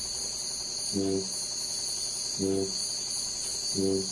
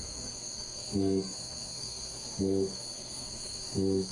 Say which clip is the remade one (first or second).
second